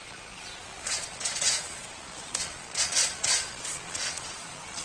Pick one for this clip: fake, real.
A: fake